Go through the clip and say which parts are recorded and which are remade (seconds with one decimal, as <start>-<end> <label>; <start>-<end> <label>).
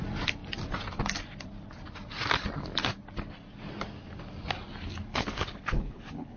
0.0-5.1 recorded; 5.1-6.4 remade